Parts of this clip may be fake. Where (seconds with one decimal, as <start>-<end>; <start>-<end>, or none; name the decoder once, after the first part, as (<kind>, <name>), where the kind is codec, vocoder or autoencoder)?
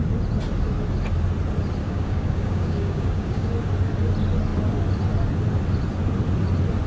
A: 1.8-3.5 (codec, DAC)